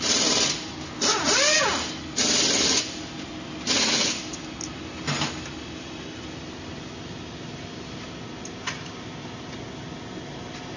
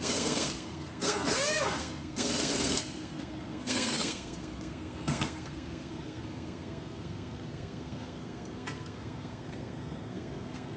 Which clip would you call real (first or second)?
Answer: first